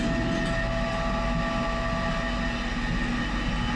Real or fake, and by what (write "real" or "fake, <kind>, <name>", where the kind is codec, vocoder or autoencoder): real